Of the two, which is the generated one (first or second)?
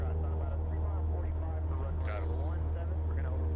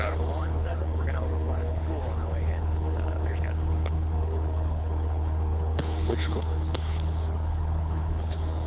second